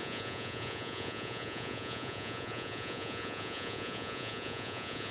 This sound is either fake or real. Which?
fake